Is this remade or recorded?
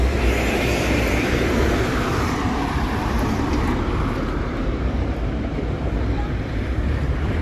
remade